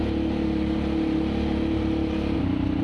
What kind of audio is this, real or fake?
real